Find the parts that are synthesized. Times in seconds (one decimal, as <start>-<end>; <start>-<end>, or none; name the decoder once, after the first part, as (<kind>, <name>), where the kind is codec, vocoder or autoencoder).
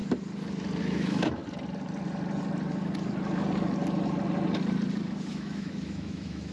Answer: 0.8-1.4 (autoencoder, DAC-VAE); 5.3-6.5